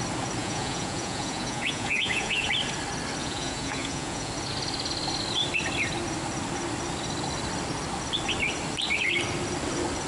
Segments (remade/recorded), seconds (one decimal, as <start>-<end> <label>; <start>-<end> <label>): 0.0-0.4 recorded; 0.4-2.5 remade; 2.5-3.2 recorded; 3.2-4.3 remade; 4.3-10.1 recorded

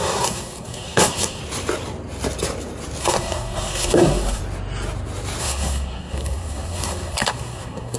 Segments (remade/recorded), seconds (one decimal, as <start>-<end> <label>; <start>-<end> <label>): 0.0-1.4 remade; 1.4-3.0 recorded; 3.0-4.4 remade; 4.4-5.4 recorded; 5.4-8.0 remade

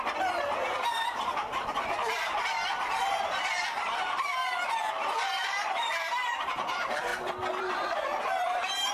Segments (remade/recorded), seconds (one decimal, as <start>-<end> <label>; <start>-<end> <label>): 0.0-4.4 remade; 4.4-4.9 recorded; 4.9-7.1 remade; 7.1-7.6 recorded; 7.6-8.9 remade

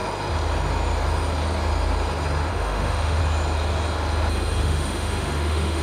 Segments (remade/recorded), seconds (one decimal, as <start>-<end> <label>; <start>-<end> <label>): 0.0-2.5 recorded; 2.5-3.2 remade; 3.2-4.6 recorded; 4.6-5.8 remade

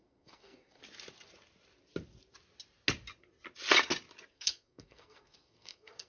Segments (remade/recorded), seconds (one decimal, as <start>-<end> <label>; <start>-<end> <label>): 0.0-0.8 remade; 0.8-4.3 recorded; 4.3-6.1 remade